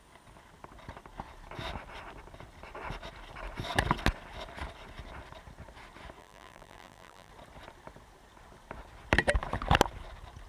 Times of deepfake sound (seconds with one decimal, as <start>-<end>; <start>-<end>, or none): 6.2-7.3